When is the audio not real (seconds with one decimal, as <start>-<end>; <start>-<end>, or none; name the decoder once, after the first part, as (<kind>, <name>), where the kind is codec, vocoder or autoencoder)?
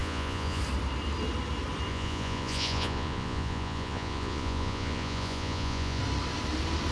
0.0-0.6 (vocoder, Vocos); 1.9-6.0